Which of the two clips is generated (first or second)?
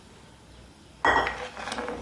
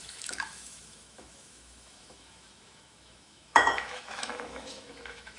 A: second